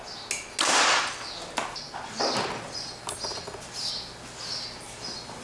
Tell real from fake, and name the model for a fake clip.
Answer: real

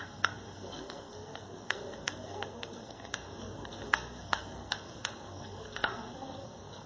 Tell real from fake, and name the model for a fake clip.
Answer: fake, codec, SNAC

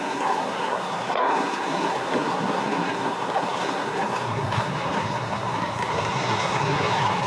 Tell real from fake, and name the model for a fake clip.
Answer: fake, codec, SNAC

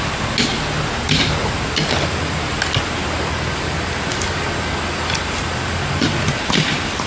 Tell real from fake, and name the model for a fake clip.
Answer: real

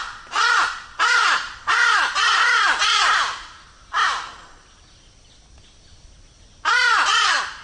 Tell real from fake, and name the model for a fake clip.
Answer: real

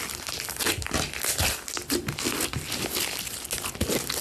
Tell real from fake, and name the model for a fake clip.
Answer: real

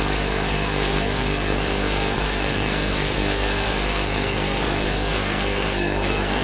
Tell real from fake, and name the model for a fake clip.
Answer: fake, codec, SNAC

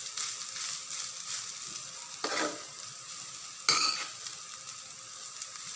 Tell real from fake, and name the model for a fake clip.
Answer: real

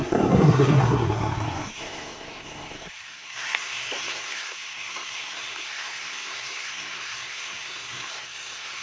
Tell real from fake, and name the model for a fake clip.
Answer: fake, codec, SNAC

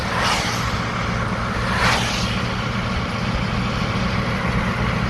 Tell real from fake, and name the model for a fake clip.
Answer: real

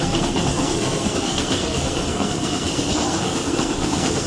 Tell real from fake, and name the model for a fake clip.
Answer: fake, codec, SNAC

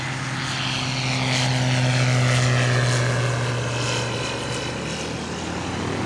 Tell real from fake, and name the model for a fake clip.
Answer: real